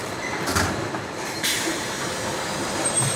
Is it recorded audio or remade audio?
remade